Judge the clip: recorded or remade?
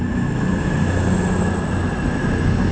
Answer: recorded